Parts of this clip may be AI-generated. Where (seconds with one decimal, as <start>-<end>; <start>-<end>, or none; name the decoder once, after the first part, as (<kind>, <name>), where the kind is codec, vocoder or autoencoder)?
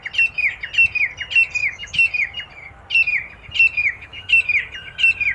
1.6-2.1 (autoencoder, DAC-VAE); 3.8-4.3